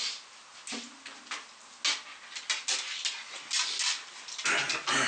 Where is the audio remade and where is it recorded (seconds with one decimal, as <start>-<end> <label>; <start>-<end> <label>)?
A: 0.0-5.1 recorded